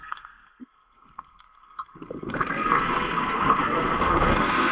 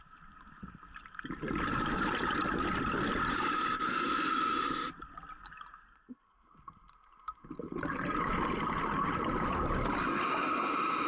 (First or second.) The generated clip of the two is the first